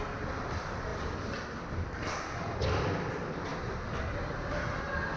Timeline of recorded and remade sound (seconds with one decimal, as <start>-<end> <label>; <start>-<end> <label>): 0.0-0.9 recorded; 0.9-2.1 remade; 2.1-5.2 recorded